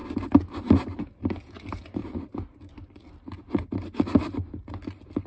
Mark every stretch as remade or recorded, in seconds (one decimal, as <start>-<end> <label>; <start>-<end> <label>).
0.0-5.3 recorded